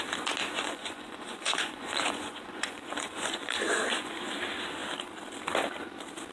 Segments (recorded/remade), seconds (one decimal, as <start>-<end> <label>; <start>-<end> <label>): 0.0-0.4 recorded; 0.4-4.2 remade; 4.2-6.3 recorded